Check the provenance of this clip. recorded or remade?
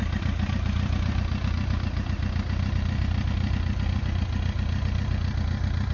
recorded